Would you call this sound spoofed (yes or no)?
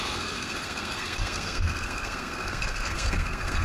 yes